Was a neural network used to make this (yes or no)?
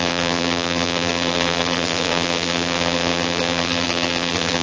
yes